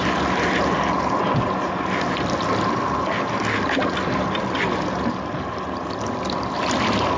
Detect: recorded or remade recorded